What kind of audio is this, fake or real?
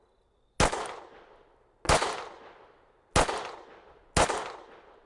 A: real